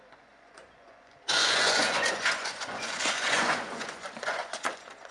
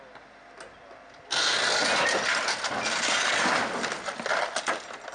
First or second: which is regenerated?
first